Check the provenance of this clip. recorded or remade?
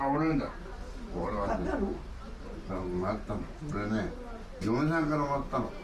recorded